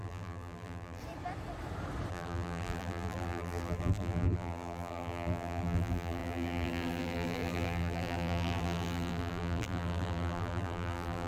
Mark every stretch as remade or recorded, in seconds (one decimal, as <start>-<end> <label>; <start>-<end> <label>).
0.0-1.0 remade; 1.0-2.1 recorded; 2.1-11.3 remade